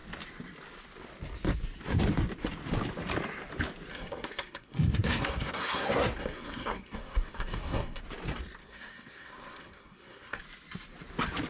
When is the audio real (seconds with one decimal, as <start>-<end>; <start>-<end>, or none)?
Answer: 0.0-3.9; 8.0-8.6; 10.4-11.5